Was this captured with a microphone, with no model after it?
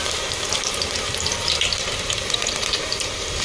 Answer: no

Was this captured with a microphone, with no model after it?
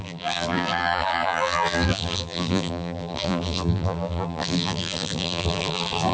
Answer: no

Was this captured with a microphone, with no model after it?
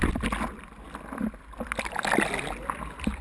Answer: yes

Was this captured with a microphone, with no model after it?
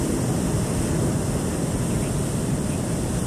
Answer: no